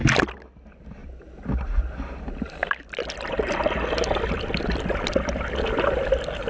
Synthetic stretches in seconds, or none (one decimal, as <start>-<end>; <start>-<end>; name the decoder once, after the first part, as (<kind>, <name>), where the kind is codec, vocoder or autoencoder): none